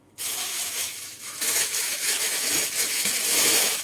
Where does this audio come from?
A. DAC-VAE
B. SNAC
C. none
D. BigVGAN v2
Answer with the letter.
A